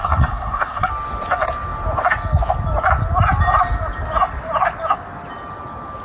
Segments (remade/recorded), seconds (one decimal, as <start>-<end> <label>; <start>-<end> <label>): 0.0-0.9 remade; 0.9-6.0 recorded